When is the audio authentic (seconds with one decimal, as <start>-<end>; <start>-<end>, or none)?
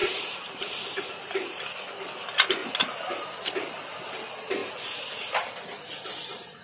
1.6-2.6; 3.5-4.6; 5.2-6.6